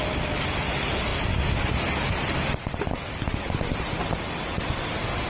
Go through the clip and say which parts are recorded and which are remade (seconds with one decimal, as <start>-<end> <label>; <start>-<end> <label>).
0.0-5.3 recorded

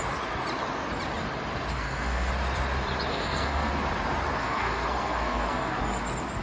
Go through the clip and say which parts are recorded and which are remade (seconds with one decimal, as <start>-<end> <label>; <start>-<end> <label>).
0.0-1.7 recorded; 1.7-2.3 remade; 2.3-3.1 recorded; 3.1-3.7 remade; 3.7-4.4 recorded; 4.4-5.8 remade; 5.8-6.4 recorded

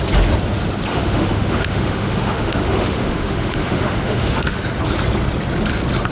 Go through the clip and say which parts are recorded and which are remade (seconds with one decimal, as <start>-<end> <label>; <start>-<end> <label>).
0.0-0.9 recorded; 0.9-4.6 remade; 4.6-6.1 recorded